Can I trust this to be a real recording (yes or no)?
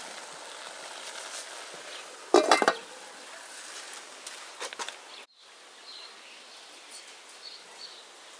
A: yes